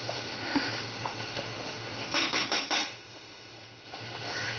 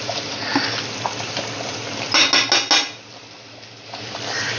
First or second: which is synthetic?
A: first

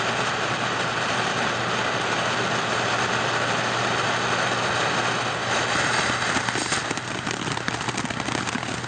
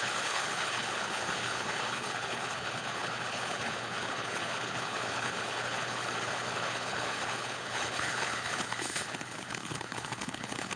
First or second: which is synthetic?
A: second